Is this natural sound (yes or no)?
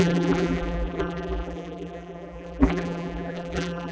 no